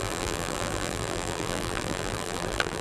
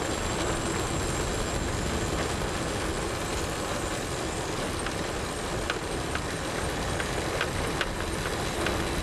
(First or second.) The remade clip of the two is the first